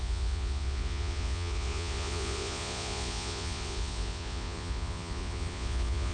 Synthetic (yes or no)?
yes